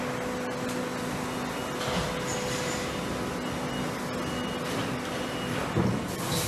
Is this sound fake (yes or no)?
no